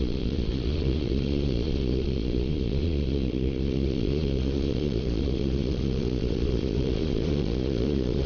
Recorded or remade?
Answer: remade